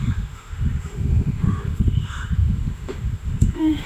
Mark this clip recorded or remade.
remade